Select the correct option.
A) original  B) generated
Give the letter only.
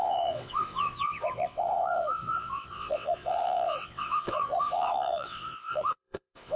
B